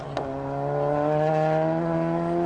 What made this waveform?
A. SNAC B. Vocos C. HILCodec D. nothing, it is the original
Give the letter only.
D